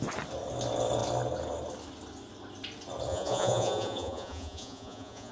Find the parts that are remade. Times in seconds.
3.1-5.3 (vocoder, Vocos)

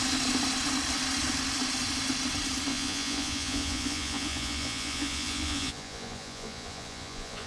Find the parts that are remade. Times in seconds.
2.7-7.5 (vocoder, Vocos)

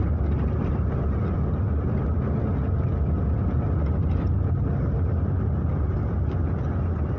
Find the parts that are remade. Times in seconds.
none